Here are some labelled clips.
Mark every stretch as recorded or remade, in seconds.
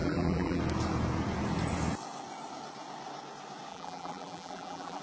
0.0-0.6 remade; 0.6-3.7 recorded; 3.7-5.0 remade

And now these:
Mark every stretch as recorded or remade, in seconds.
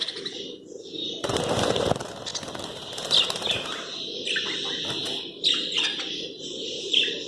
0.0-5.9 recorded; 5.9-7.3 remade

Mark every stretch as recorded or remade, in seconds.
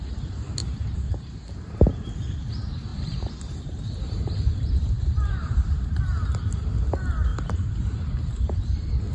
0.0-0.6 recorded; 0.6-1.5 remade; 1.5-2.9 recorded; 2.9-6.0 remade; 6.0-7.3 recorded; 7.3-9.1 remade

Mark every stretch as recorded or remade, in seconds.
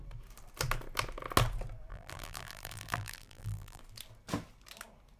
0.0-1.9 recorded; 1.9-3.8 remade; 3.8-5.2 recorded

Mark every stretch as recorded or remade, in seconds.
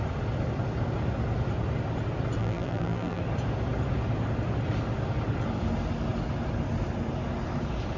0.0-2.4 recorded; 2.4-3.2 remade; 3.2-8.0 recorded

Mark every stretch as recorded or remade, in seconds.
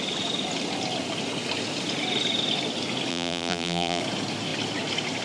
0.0-3.1 recorded; 3.1-4.0 remade; 4.0-5.2 recorded